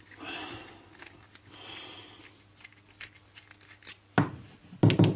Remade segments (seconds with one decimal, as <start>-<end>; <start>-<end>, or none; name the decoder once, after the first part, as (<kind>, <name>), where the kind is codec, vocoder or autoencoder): none